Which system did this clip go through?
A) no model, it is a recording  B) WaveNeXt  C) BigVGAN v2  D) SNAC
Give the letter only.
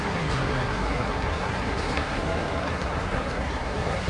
D